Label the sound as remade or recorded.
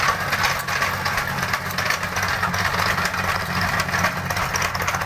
recorded